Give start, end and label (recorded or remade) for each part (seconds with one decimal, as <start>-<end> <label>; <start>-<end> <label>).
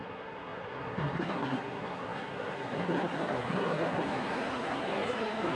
0.0-5.6 remade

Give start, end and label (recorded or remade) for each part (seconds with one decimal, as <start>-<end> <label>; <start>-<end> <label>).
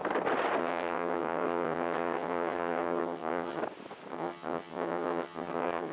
0.0-0.6 recorded; 0.6-3.6 remade; 3.6-4.1 recorded; 4.1-5.9 remade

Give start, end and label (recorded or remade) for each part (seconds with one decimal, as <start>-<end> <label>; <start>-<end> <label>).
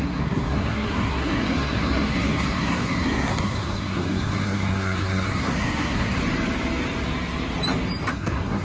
0.0-6.2 remade; 6.2-8.1 recorded; 8.1-8.6 remade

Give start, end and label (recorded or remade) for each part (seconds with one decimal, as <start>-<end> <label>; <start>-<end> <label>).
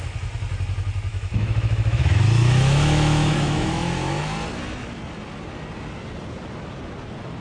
0.0-1.1 recorded; 1.1-4.2 remade; 4.2-7.4 recorded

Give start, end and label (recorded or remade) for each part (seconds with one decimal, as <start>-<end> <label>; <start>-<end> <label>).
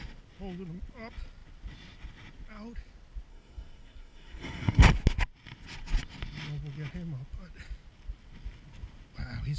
0.0-3.3 recorded; 3.3-4.9 remade; 4.9-9.6 recorded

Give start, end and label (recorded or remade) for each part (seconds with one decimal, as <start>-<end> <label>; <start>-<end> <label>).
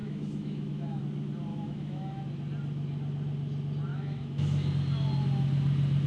0.0-1.0 remade; 1.0-1.5 recorded; 1.5-2.2 remade; 2.2-3.9 recorded; 3.9-4.7 remade; 4.7-6.1 recorded